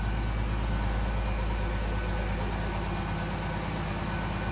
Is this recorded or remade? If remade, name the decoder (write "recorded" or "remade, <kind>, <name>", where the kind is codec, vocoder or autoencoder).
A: recorded